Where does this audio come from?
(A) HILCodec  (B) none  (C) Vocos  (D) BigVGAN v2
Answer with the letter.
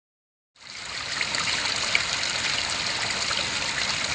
B